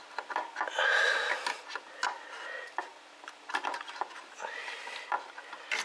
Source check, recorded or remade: recorded